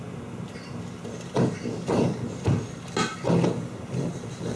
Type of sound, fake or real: real